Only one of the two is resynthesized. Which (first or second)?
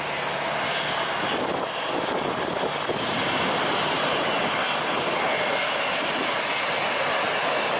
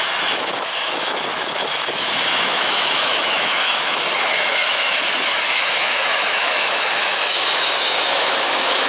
second